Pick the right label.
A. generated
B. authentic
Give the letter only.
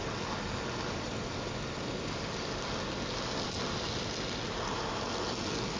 B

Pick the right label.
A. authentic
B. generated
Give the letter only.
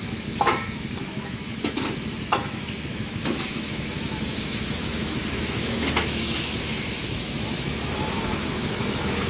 B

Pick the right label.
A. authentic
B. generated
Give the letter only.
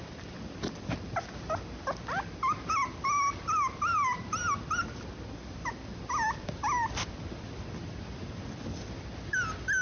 A